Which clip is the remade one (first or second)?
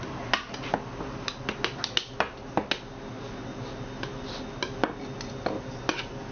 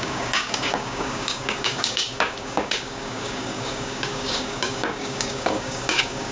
second